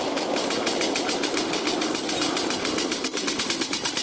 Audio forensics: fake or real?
real